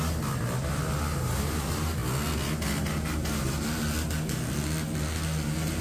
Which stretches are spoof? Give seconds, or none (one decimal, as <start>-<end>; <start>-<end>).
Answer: none

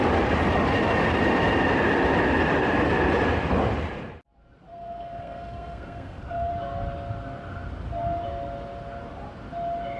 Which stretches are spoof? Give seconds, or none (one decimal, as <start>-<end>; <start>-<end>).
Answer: 4.7-6.5

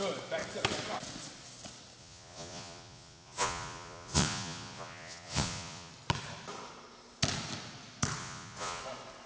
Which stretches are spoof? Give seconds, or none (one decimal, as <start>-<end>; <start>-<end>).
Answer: 2.0-5.9; 8.2-8.8

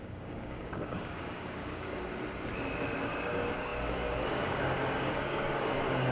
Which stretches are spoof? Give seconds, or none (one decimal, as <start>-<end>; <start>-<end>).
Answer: 0.0-2.1; 3.0-6.1